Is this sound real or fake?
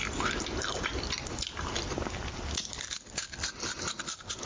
real